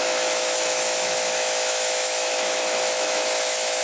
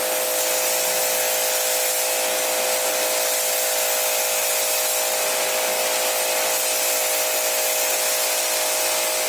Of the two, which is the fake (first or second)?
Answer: first